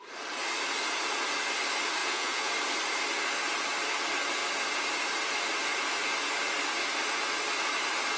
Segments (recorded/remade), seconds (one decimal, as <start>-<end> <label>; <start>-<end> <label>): 0.0-2.0 recorded; 2.0-2.5 remade; 2.5-8.2 recorded